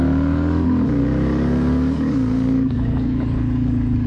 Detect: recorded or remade remade